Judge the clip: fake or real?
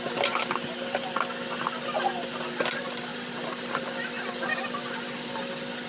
real